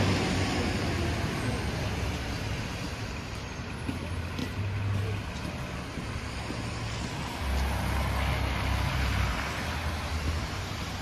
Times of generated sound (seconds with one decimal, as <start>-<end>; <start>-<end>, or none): 4.4-5.0